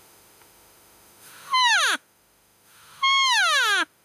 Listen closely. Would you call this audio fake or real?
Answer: fake